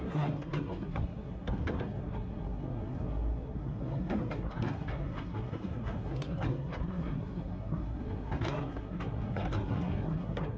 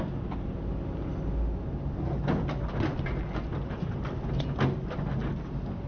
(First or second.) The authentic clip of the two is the second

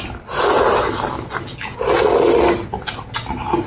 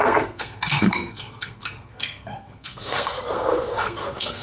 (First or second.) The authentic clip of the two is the first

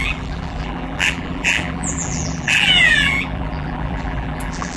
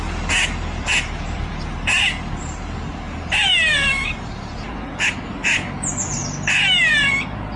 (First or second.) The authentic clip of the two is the second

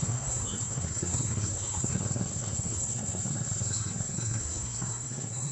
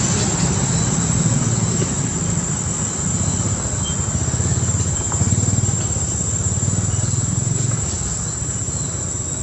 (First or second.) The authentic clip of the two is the second